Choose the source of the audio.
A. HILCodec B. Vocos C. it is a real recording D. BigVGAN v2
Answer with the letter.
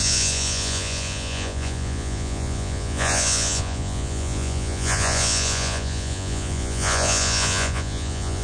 B